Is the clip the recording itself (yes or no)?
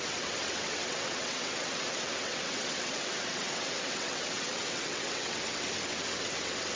no